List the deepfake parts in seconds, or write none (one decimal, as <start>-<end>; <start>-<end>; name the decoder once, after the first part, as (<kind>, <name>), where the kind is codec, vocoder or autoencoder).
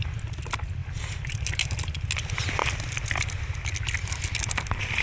none